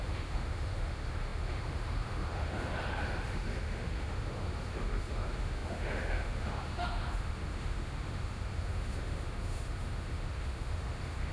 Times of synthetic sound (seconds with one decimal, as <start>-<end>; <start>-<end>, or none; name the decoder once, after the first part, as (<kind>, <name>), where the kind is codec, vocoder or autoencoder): 0.0-11.3 (autoencoder, DAC-VAE)